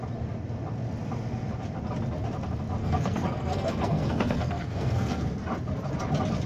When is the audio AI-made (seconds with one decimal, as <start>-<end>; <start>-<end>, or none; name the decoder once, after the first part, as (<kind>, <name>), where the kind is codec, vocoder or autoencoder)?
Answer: 2.8-5.2 (codec, SNAC)